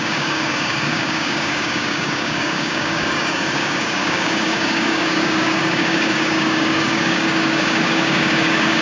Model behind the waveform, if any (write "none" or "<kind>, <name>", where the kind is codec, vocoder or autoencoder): codec, DAC